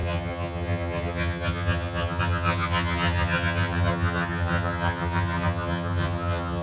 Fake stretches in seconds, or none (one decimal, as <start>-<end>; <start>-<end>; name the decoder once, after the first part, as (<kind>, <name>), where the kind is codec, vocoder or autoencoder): 0.0-6.6 (vocoder, HiFi-GAN)